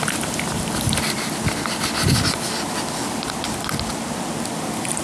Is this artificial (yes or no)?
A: no